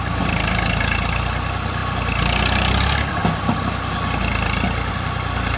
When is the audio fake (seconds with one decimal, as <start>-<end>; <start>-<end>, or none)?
none